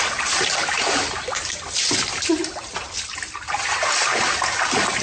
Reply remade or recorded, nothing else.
recorded